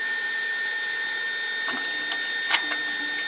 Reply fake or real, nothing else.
real